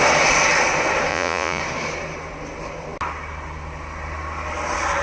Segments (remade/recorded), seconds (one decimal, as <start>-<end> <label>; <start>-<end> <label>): 0.0-1.1 recorded; 1.1-1.6 remade; 1.6-5.0 recorded